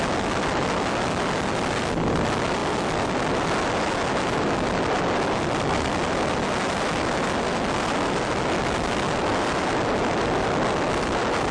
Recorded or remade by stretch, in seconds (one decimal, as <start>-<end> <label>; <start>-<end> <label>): 0.0-11.5 recorded